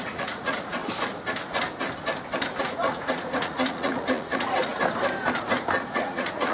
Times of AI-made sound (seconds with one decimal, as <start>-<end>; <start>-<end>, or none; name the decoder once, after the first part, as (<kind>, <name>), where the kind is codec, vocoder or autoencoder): 0.0-0.8 (vocoder, Vocos); 2.6-4.7; 5.8-6.5